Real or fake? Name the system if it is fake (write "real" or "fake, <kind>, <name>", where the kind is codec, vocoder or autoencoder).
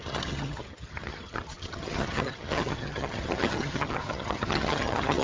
fake, vocoder, HiFi-GAN